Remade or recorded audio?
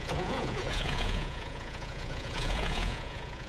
remade